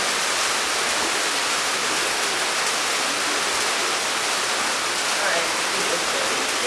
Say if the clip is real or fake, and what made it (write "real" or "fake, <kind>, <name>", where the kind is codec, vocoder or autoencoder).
real